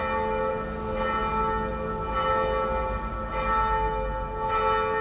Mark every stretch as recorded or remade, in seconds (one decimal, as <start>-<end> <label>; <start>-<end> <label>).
0.0-5.0 recorded